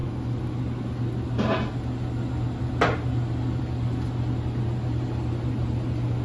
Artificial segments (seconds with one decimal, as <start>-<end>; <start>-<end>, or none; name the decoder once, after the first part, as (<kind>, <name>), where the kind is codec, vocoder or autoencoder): none